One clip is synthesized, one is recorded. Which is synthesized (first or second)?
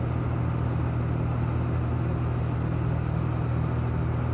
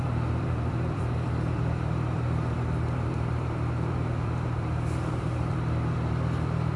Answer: second